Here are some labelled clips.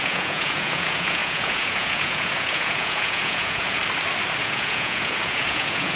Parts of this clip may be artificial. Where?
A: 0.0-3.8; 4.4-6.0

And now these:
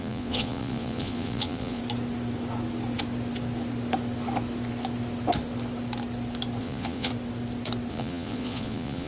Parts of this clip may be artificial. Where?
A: 0.0-1.8; 6.6-7.1; 7.9-9.1